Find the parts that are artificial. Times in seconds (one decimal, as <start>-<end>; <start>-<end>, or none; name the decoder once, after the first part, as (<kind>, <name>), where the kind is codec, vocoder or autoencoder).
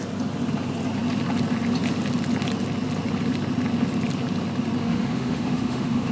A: 4.8-6.1 (autoencoder, DAC-VAE)